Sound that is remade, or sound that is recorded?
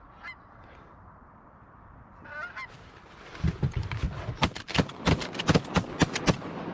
recorded